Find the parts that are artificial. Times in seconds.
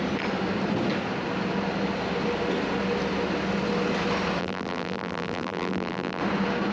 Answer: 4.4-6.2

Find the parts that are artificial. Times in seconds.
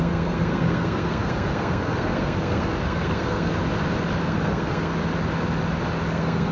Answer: 0.0-3.5; 4.2-4.9; 6.1-6.5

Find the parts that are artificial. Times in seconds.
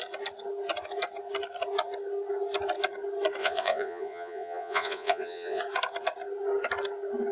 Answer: 3.4-5.6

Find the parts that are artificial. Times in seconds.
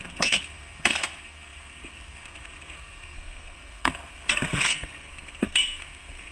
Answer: 0.0-6.3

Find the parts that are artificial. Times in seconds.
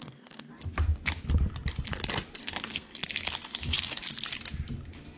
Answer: 0.0-0.5; 2.4-3.0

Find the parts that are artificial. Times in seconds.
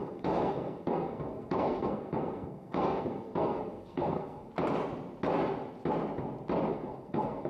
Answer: 0.0-4.5; 6.7-7.5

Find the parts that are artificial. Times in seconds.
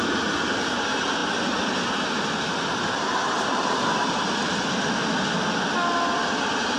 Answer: none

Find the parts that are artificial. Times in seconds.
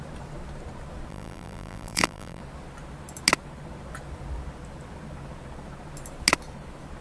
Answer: 1.1-2.4